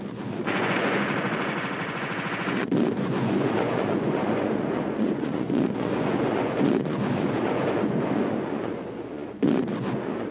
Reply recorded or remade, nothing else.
remade